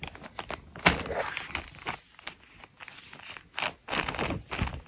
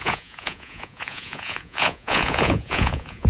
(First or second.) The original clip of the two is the first